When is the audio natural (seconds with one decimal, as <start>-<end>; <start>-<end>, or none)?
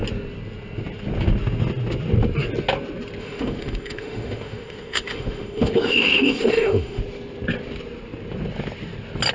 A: 0.0-3.2; 7.0-9.3